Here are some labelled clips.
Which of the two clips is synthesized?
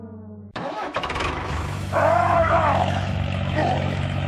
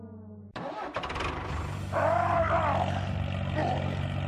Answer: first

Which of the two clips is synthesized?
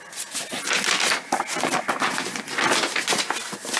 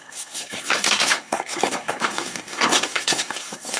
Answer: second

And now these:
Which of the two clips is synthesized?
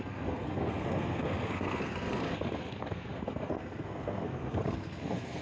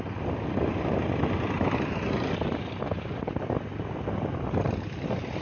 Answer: first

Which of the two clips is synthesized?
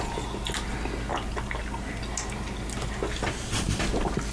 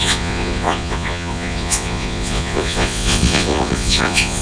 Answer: second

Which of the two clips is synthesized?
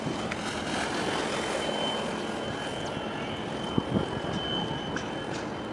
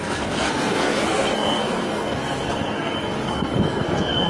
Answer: second